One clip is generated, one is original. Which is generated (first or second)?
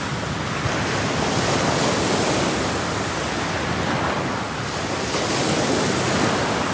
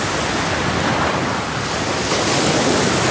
second